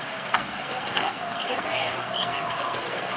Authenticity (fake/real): fake